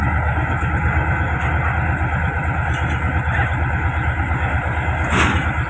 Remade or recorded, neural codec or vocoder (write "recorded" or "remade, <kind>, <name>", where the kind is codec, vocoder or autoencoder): recorded